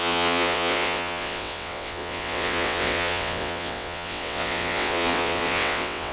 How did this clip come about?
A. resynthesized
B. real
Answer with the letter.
A